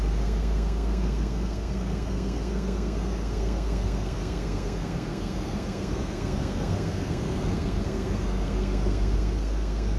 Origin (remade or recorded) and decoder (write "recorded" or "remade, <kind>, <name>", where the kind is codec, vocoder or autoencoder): remade, codec, SNAC